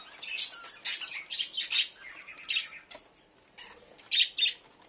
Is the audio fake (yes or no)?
no